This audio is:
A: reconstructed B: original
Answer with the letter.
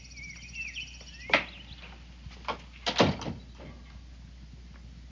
B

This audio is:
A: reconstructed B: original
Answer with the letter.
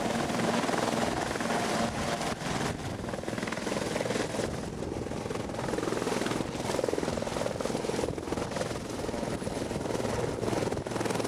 B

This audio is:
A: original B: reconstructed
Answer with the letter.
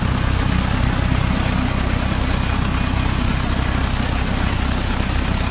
A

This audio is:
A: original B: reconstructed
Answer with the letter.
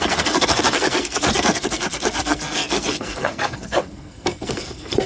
B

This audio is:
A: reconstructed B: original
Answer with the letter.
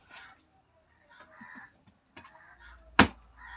B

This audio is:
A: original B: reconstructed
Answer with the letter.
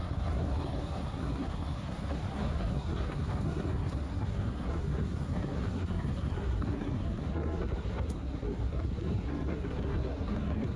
B